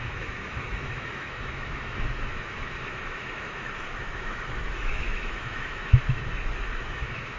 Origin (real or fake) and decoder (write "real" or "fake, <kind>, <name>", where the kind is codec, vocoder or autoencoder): fake, autoencoder, DAC-VAE